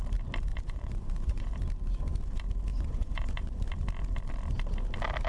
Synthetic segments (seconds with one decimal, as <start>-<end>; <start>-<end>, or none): 0.5-1.5; 2.7-3.6